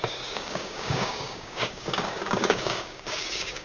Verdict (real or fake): fake